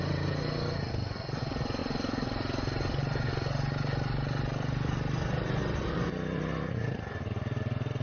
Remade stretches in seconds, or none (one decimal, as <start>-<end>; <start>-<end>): none